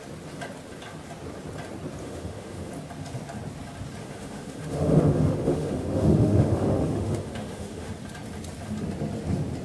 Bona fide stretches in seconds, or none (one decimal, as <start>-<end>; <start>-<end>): 0.0-2.0; 2.7-4.0; 7.9-9.6